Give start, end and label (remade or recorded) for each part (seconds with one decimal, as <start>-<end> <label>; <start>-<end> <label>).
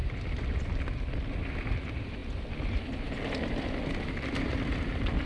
0.0-5.3 recorded